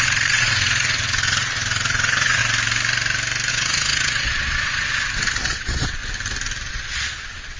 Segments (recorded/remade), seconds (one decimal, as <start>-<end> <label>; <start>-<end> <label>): 0.0-2.4 remade; 2.4-3.5 recorded; 3.5-4.9 remade; 4.9-5.4 recorded; 5.4-6.0 remade; 6.0-6.7 recorded; 6.7-7.6 remade